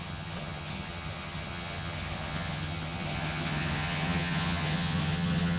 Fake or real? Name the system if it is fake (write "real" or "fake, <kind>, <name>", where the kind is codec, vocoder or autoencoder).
fake, vocoder, HiFi-GAN